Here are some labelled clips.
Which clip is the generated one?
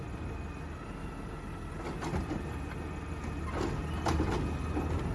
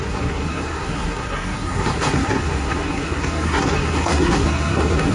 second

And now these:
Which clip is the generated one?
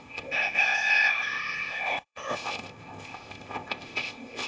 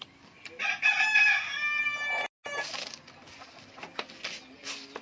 first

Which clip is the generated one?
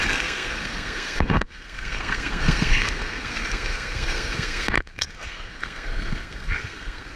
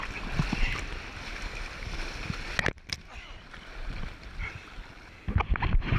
first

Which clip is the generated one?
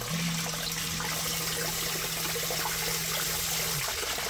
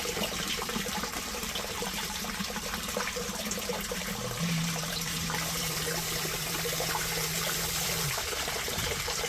second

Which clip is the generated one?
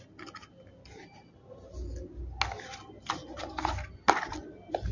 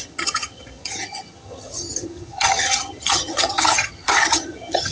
second